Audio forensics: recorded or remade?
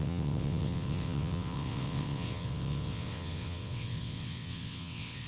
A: remade